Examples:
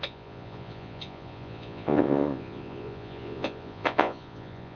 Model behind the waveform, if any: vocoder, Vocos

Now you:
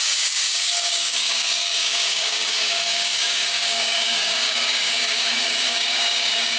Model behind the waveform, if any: codec, DAC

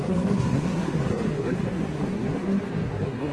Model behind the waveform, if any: codec, SNAC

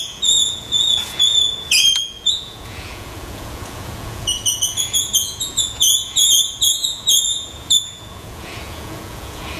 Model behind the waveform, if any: vocoder, Vocos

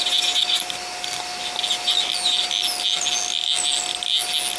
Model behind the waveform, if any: none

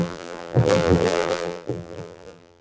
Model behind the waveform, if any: vocoder, BigVGAN v2